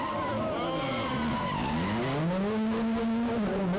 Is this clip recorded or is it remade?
recorded